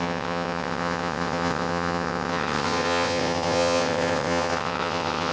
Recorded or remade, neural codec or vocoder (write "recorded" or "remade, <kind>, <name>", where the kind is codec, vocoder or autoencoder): remade, vocoder, WaveNeXt